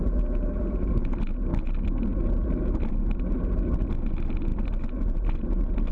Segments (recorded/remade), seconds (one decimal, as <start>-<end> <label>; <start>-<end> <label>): 0.0-5.9 recorded